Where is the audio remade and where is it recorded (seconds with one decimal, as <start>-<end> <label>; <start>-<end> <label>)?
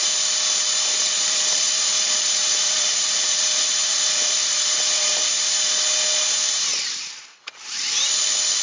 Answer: 0.0-1.0 recorded; 1.0-5.3 remade; 5.3-8.6 recorded